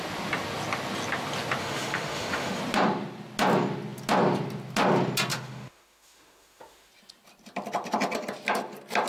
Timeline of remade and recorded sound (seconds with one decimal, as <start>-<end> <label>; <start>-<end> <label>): 0.0-1.6 recorded; 1.6-2.6 remade; 2.6-5.3 recorded; 5.3-6.9 remade; 6.9-9.1 recorded